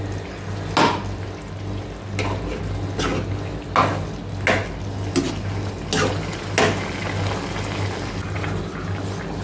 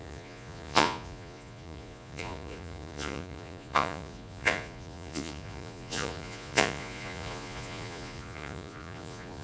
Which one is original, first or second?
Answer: first